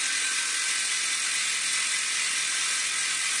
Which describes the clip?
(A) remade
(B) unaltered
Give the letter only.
B